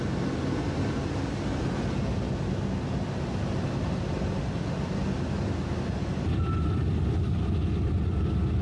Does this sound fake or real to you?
real